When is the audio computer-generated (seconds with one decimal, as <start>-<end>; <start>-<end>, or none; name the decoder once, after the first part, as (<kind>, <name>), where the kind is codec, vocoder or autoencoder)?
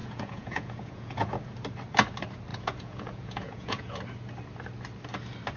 0.0-1.3 (vocoder, Vocos); 2.5-4.0